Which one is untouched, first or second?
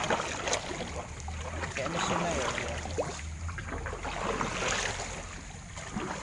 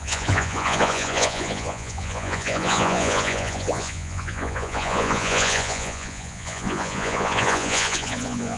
first